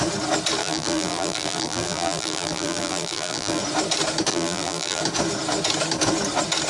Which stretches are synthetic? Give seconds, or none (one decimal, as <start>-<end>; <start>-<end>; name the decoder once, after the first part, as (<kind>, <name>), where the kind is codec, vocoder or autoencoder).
0.6-3.6 (vocoder, BigVGAN v2); 4.3-5.0

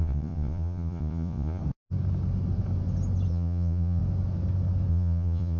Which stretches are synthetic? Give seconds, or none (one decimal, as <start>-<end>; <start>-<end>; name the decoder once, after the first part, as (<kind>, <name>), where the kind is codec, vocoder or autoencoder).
0.0-1.6 (vocoder, Vocos); 3.3-4.0; 4.9-5.6

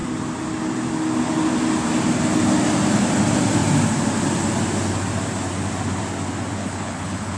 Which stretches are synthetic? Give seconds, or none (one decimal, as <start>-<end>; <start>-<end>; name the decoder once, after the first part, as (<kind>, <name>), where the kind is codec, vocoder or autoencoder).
6.6-7.4 (codec, HILCodec)

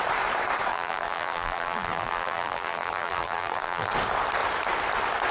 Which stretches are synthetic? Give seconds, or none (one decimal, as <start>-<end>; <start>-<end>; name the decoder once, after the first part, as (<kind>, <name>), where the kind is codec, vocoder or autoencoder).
0.7-3.9 (vocoder, BigVGAN v2)

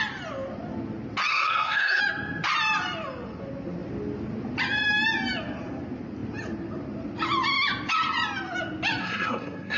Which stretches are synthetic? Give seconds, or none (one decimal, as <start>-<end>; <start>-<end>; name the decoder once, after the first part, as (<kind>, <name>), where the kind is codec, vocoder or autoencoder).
1.3-2.0 (codec, SNAC); 9.0-9.8

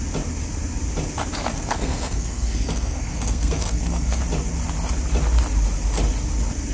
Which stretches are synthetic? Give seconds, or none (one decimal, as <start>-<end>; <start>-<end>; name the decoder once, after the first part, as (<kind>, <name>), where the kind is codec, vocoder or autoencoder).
1.5-4.2 (codec, SNAC)

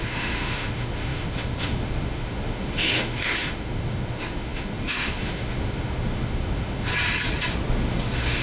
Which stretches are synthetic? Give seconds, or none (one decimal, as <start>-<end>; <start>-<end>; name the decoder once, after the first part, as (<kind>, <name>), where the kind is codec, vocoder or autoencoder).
0.0-6.9 (autoencoder, DAC-VAE); 7.7-8.4